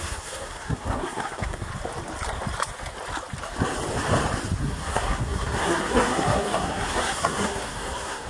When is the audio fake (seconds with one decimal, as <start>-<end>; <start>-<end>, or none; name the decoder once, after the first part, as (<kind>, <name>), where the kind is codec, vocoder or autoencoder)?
0.0-1.7 (codec, SNAC); 4.6-8.3